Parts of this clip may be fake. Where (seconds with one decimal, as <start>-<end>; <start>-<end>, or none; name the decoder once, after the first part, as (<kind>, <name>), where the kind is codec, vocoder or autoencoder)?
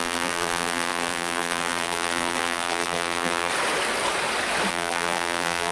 0.0-3.5 (vocoder, BigVGAN v2); 4.7-5.7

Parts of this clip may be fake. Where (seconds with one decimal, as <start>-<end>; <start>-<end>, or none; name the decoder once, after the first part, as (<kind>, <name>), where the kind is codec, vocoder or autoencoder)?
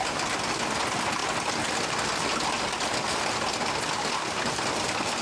none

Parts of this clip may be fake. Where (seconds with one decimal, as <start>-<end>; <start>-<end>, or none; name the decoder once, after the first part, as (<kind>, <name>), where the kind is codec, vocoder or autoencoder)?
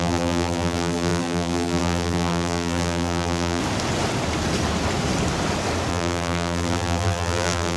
0.0-3.6 (vocoder, BigVGAN v2); 5.9-7.8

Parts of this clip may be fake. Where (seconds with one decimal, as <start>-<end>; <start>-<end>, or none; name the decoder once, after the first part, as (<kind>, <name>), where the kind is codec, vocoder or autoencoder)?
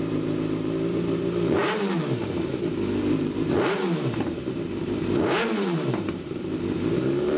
0.0-7.4 (vocoder, BigVGAN v2)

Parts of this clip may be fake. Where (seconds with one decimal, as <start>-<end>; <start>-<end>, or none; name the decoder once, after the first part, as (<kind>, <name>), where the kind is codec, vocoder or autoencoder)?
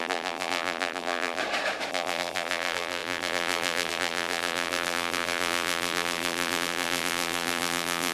0.0-1.4 (vocoder, BigVGAN v2); 1.9-8.1